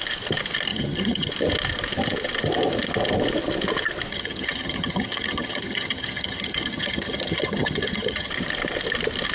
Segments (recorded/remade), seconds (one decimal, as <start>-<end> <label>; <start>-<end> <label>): 0.0-0.7 recorded; 0.7-1.3 remade; 1.3-4.1 recorded; 4.1-8.3 remade; 8.3-9.3 recorded